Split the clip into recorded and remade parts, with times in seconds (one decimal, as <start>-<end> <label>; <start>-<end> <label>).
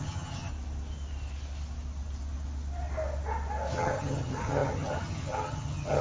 0.0-0.5 remade; 0.5-3.7 recorded; 3.7-6.0 remade